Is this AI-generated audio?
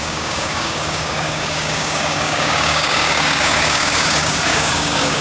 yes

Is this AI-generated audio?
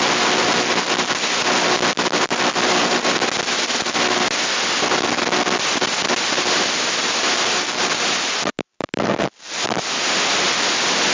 no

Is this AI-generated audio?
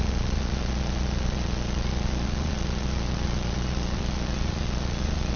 yes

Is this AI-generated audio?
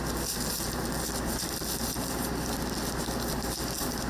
no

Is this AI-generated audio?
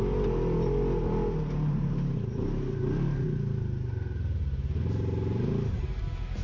no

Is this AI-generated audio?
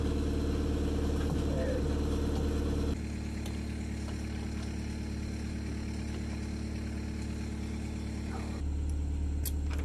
no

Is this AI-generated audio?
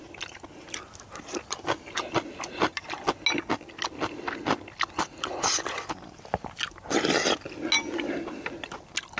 no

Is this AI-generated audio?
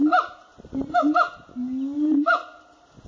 no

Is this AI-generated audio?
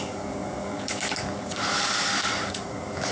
yes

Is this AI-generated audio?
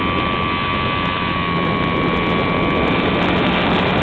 no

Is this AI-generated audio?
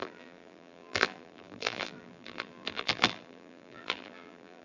yes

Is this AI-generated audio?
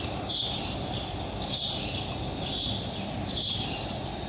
no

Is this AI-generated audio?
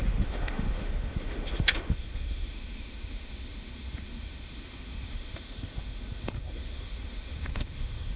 yes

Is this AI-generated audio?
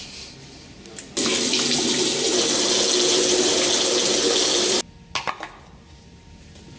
no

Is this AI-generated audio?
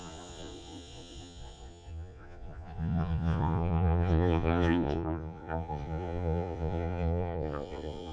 yes